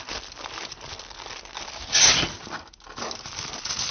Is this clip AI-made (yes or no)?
no